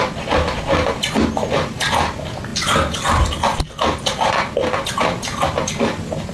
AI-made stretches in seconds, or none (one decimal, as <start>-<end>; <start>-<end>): none